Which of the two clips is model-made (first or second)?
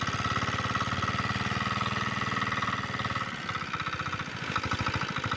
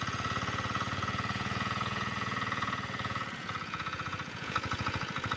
second